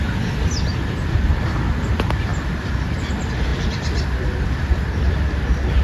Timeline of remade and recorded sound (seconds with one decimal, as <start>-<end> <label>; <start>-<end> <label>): 0.0-2.3 recorded; 2.3-3.1 remade; 3.1-3.5 recorded; 3.5-5.1 remade; 5.1-5.8 recorded